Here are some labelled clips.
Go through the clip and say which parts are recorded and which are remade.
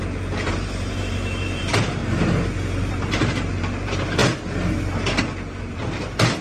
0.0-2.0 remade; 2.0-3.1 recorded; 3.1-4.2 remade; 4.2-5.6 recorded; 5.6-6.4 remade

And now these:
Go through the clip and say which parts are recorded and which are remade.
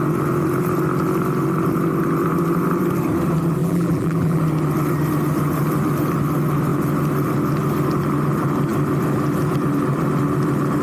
0.0-3.6 recorded; 3.6-4.4 remade; 4.4-10.8 recorded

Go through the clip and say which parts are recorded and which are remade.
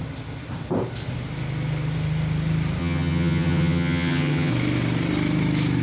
0.0-2.8 recorded; 2.8-4.5 remade; 4.5-5.8 recorded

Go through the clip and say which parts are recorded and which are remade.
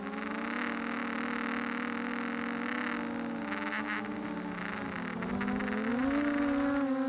0.0-7.1 recorded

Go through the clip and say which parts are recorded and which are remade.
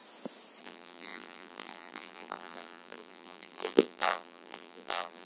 0.0-0.6 recorded; 0.6-5.3 remade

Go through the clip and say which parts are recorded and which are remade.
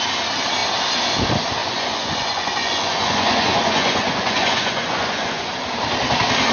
0.0-1.6 recorded; 1.6-5.5 remade; 5.5-6.5 recorded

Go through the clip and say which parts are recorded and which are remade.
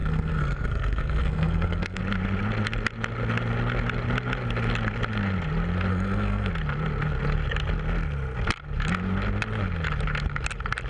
0.0-2.0 remade; 2.0-5.9 recorded; 5.9-6.5 remade; 6.5-10.9 recorded